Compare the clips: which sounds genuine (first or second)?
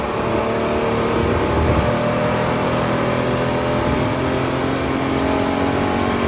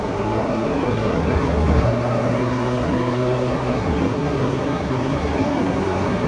first